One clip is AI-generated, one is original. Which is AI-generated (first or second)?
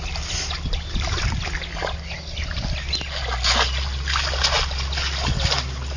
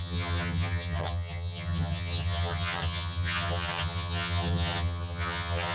second